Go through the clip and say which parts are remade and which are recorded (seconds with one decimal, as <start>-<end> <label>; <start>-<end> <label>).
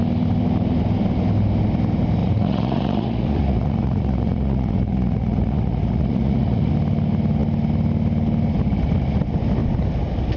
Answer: 0.0-2.2 recorded; 2.2-6.7 remade; 6.7-10.4 recorded